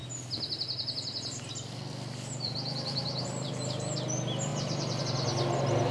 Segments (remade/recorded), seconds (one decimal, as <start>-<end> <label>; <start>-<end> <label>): 0.0-3.5 remade; 3.5-4.5 recorded; 4.5-5.0 remade; 5.0-5.9 recorded